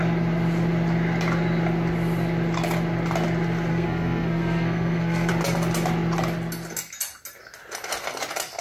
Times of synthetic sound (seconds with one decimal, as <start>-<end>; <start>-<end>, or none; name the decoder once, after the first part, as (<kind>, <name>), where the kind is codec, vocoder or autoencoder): 3.7-5.3 (codec, SNAC)